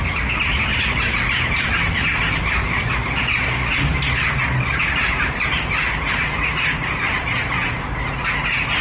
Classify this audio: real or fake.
real